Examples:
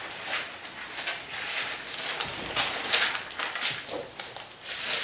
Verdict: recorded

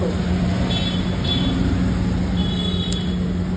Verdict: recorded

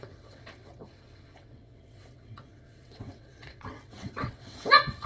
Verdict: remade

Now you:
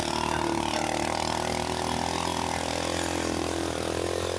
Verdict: recorded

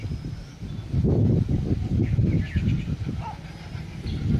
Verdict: recorded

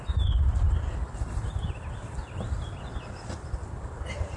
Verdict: recorded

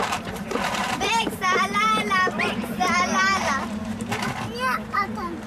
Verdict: remade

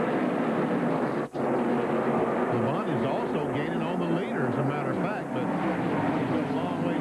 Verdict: recorded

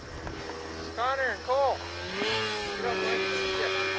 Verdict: recorded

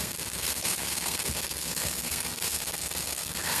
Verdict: remade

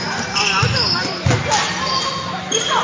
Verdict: recorded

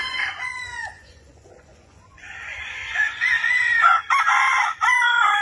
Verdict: remade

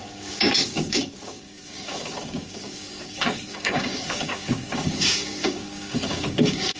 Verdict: remade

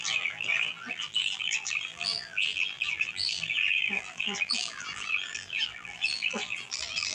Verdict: remade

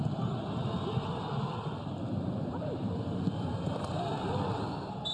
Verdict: remade